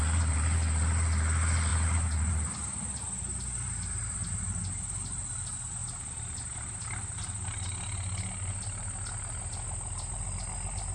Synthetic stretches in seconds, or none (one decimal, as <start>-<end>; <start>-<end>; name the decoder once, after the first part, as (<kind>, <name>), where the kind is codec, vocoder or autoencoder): none